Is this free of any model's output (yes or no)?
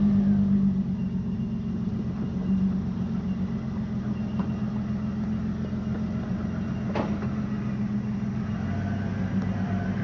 yes